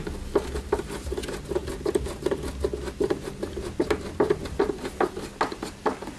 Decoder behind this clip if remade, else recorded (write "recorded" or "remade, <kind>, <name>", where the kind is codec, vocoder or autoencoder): recorded